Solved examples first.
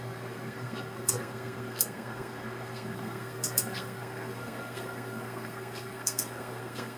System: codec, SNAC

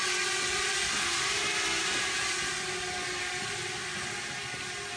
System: none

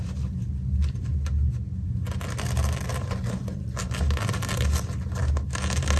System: none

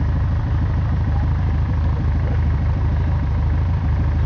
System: vocoder, BigVGAN v2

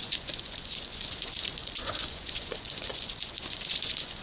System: vocoder, Vocos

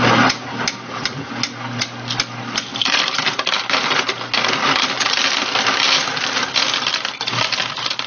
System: none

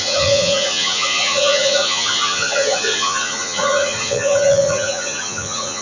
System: vocoder, Vocos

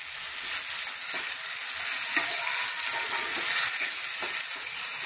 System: none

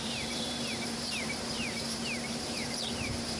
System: vocoder, BigVGAN v2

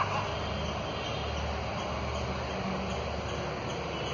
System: none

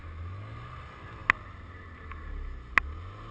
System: none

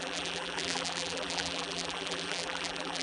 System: vocoder, BigVGAN v2